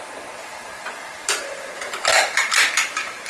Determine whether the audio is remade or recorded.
recorded